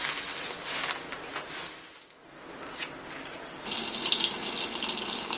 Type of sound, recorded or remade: recorded